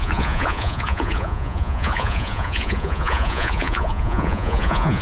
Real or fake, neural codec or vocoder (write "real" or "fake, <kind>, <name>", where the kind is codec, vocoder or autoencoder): fake, vocoder, Vocos